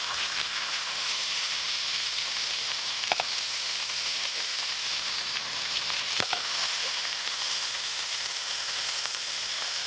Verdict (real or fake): fake